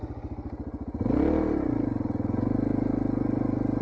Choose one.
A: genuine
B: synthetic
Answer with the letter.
A